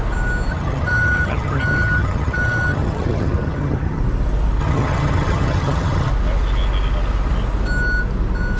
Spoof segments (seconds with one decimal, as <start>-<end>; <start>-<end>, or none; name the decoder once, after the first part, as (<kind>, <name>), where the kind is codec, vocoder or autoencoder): 0.5-4.0 (vocoder, HiFi-GAN); 4.6-6.1